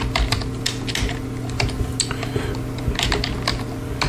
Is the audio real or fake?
real